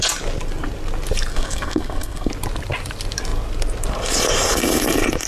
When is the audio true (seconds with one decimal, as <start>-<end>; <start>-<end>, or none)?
0.0-1.3; 2.3-5.3

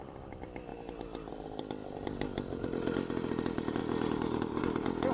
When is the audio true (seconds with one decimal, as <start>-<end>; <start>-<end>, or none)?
0.0-5.1

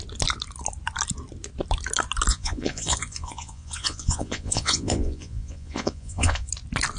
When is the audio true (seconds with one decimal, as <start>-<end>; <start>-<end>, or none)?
0.0-2.3; 6.5-7.0